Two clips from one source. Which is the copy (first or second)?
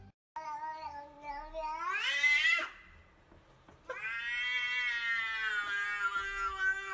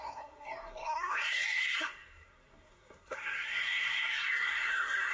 second